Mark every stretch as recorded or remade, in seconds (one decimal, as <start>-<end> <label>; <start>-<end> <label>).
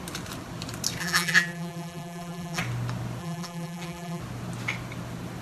0.0-1.0 recorded; 1.0-2.6 remade; 2.6-3.2 recorded; 3.2-4.2 remade; 4.2-5.4 recorded